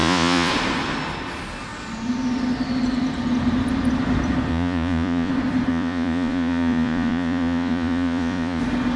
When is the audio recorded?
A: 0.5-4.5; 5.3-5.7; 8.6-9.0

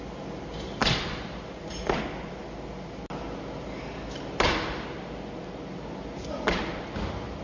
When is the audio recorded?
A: 0.0-7.4

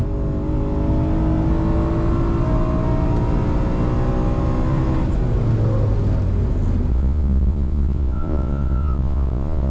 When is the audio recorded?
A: 0.0-6.9

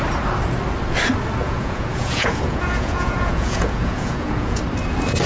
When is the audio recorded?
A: 0.0-1.4; 4.6-5.3

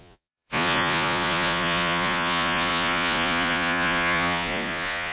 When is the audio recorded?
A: none

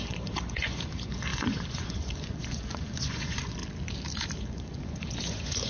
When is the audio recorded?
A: 3.6-4.4

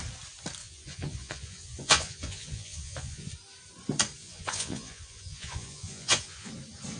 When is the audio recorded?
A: 0.0-0.6; 3.3-4.2; 6.5-7.0